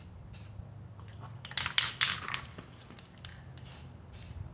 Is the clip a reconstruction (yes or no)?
no